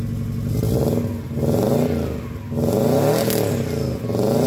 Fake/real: real